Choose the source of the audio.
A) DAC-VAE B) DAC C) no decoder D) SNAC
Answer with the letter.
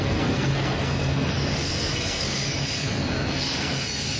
D